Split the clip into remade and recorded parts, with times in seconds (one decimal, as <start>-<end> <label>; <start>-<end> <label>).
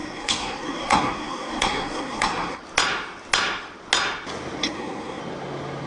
0.0-2.6 remade; 2.6-4.6 recorded; 4.6-5.2 remade; 5.2-5.9 recorded